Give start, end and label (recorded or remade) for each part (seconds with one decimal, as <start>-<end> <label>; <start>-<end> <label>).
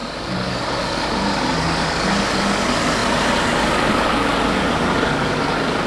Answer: 0.0-5.9 remade